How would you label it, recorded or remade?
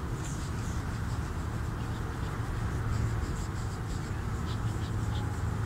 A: recorded